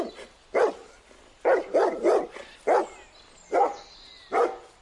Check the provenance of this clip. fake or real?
real